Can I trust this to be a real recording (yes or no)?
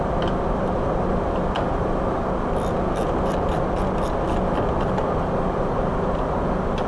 yes